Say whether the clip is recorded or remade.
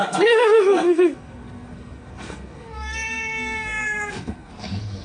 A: remade